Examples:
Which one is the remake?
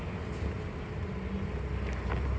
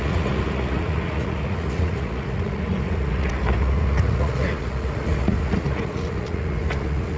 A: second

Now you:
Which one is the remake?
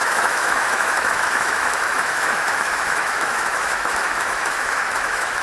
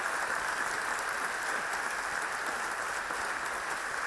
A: first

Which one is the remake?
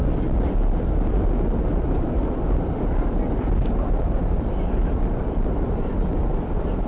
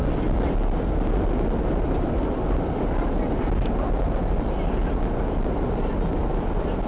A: first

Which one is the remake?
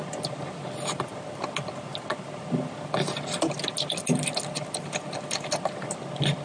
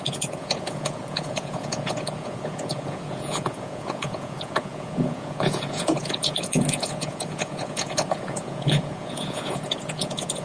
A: second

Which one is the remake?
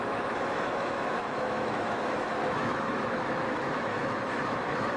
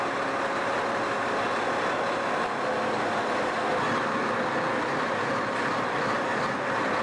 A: first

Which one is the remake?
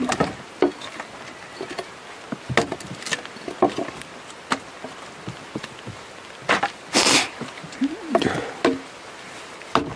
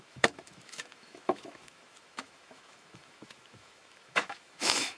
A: second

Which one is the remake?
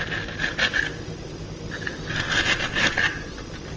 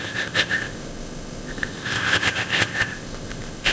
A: second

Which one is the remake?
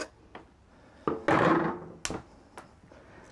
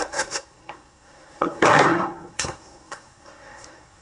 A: second